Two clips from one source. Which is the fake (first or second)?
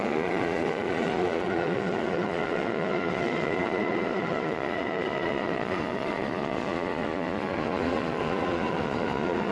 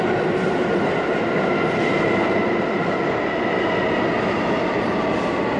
first